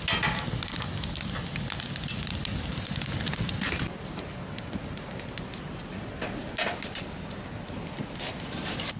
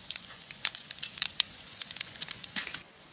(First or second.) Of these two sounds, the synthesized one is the second